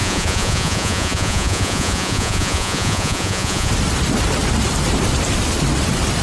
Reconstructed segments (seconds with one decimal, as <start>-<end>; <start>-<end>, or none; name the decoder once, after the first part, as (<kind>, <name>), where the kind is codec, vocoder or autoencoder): 0.0-3.7 (vocoder, Vocos)